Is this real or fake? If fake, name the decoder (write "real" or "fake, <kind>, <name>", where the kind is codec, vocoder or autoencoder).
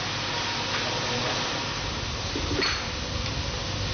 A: real